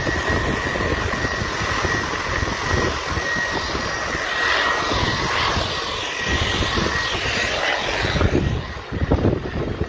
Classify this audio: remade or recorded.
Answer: recorded